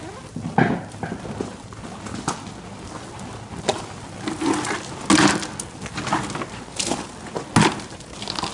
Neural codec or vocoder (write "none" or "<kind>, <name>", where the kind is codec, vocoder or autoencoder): none